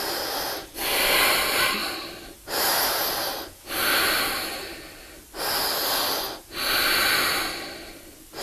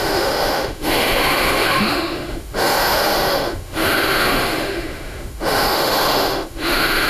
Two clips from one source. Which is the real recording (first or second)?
first